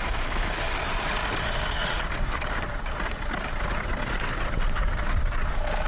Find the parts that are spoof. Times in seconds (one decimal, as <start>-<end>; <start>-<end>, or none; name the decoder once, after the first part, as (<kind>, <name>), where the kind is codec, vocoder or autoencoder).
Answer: 1.2-3.6 (vocoder, BigVGAN v2)